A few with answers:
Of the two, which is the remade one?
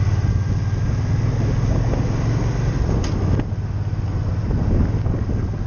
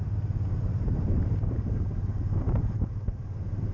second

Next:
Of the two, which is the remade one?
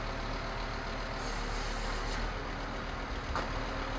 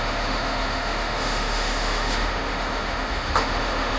second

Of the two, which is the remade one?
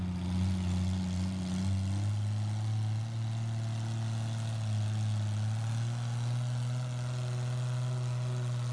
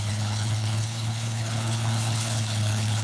second